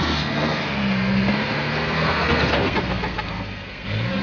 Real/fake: fake